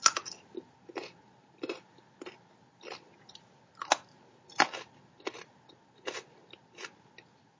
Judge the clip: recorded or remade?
recorded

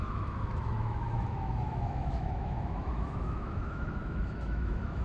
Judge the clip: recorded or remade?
remade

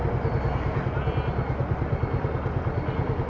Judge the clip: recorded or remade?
recorded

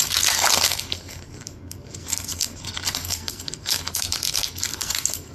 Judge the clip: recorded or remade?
remade